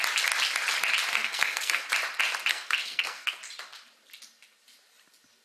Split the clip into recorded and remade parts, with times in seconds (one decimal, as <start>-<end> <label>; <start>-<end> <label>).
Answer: 0.0-1.1 recorded; 1.1-1.9 remade; 1.9-2.5 recorded; 2.5-3.4 remade; 3.4-5.4 recorded

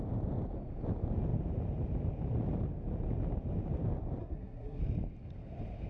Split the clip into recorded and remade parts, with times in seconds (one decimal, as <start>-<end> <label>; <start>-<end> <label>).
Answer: 0.0-4.2 recorded; 4.2-4.8 remade; 4.8-5.9 recorded

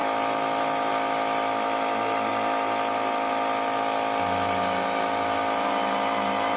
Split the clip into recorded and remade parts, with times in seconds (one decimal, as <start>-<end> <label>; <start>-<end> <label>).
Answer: 0.0-6.6 recorded

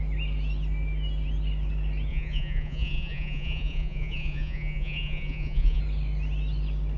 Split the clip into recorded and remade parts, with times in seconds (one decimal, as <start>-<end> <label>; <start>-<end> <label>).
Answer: 0.0-2.1 recorded; 2.1-5.8 remade; 5.8-7.0 recorded

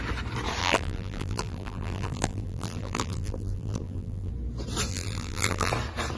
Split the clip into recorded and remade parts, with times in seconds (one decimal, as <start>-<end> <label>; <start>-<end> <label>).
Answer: 0.0-0.6 recorded; 0.6-4.3 remade; 4.3-4.9 recorded; 4.9-5.7 remade; 5.7-6.2 recorded

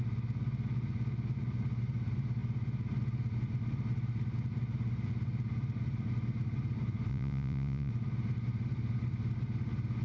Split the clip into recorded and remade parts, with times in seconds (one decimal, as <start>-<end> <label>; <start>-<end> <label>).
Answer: 0.0-7.1 recorded; 7.1-7.9 remade; 7.9-10.0 recorded

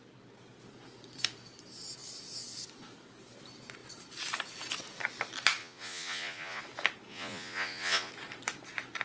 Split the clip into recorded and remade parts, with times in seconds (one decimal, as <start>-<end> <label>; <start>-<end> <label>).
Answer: 0.0-5.6 recorded; 5.6-6.6 remade; 6.6-7.1 recorded; 7.1-8.1 remade; 8.1-9.0 recorded

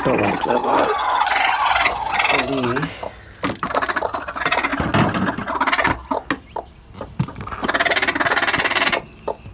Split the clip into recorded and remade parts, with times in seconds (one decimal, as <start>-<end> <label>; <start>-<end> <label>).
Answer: 0.0-0.6 recorded; 0.6-2.1 remade; 2.1-9.5 recorded